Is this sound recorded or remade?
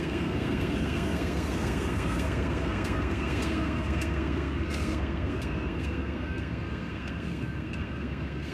remade